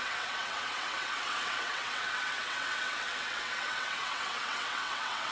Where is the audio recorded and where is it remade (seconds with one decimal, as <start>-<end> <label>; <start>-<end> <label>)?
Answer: 0.0-5.3 remade

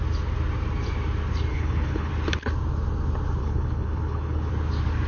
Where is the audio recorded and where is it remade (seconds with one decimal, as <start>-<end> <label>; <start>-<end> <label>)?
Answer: 0.0-1.5 recorded; 1.5-2.1 remade; 2.1-3.4 recorded; 3.4-4.5 remade; 4.5-5.1 recorded

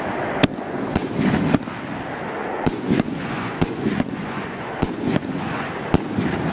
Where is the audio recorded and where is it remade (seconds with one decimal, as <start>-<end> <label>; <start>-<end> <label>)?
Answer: 0.0-0.5 recorded; 0.5-1.1 remade; 1.1-2.4 recorded; 2.4-5.9 remade; 5.9-6.5 recorded

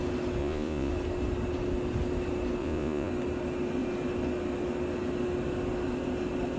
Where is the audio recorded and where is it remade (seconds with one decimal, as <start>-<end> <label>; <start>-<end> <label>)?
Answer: 0.0-0.4 recorded; 0.4-0.9 remade; 0.9-2.6 recorded; 2.6-3.1 remade; 3.1-6.6 recorded

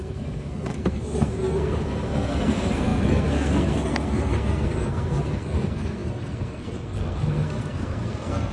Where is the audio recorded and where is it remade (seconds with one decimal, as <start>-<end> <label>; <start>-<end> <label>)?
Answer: 0.0-8.5 remade

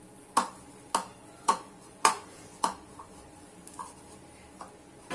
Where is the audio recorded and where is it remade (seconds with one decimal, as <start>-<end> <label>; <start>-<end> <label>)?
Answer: 0.0-1.2 recorded; 1.2-3.5 remade; 3.5-5.1 recorded